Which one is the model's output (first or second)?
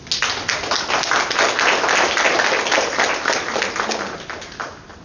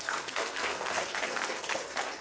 second